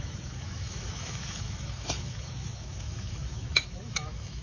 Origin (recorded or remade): remade